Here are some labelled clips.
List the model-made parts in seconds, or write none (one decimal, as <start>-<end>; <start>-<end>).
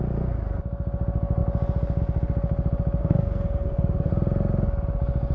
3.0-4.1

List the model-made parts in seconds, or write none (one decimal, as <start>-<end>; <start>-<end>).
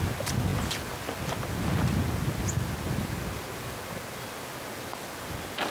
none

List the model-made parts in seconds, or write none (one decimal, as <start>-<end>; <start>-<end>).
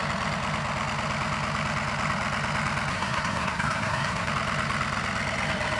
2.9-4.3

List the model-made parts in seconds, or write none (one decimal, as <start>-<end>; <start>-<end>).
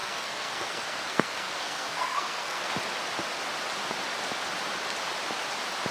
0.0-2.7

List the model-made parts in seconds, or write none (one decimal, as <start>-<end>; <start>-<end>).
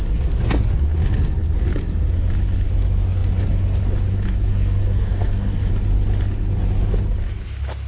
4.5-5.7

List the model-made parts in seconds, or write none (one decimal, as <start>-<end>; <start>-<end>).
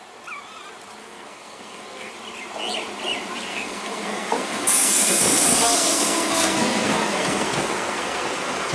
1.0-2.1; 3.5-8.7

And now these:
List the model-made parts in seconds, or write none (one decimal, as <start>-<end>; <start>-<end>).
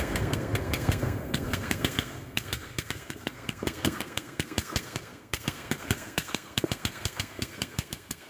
0.0-8.3